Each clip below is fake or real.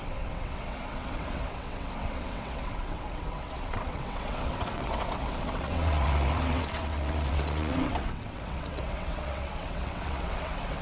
fake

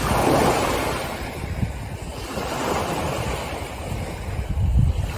real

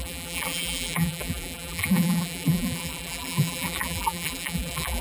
fake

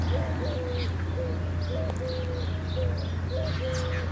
real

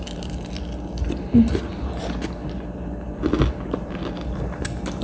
real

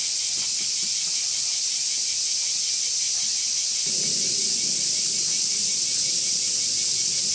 real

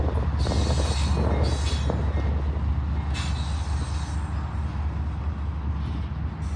real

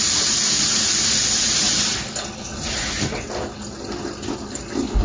real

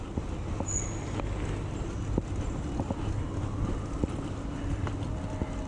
real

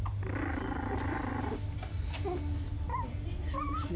real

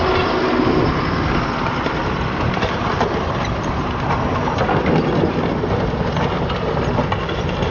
real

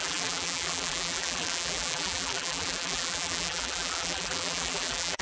fake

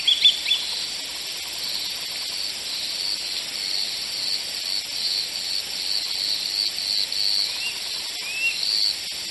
real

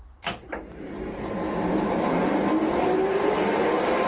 real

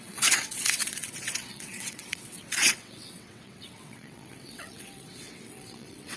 fake